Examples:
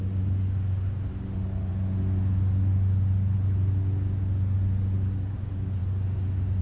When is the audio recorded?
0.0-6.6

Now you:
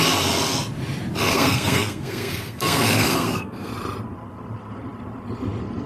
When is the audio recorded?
0.0-1.3; 3.7-5.9

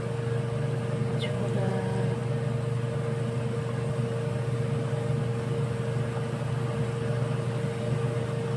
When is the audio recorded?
0.0-1.1; 1.7-8.6

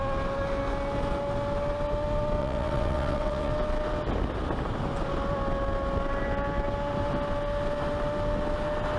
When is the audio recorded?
0.0-2.4; 3.5-9.0

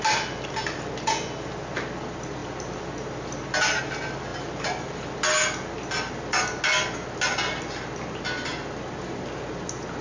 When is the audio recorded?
0.0-10.0

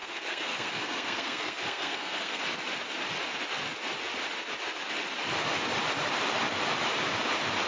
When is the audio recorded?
2.4-7.7